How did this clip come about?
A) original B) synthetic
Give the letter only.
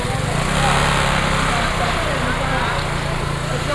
A